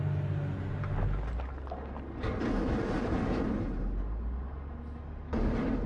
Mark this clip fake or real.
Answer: real